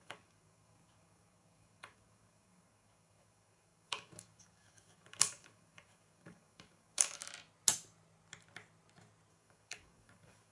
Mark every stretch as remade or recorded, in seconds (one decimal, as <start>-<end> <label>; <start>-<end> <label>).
0.0-7.2 remade; 7.2-9.3 recorded; 9.3-10.5 remade